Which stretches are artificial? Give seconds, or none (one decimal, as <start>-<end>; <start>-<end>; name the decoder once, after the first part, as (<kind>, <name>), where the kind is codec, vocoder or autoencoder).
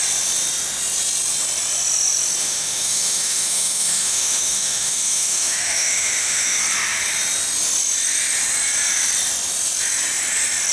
2.4-6.6 (autoencoder, DAC-VAE)